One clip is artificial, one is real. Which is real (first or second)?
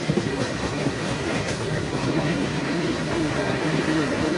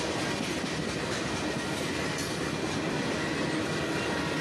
second